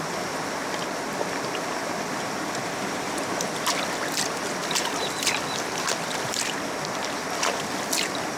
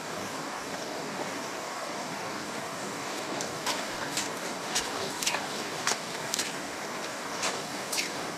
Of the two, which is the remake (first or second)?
second